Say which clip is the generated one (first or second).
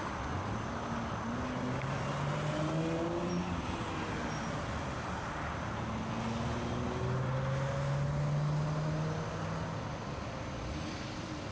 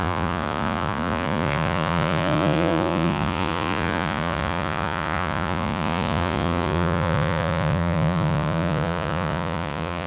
second